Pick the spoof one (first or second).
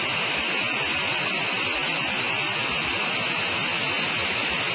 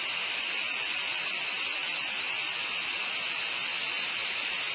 second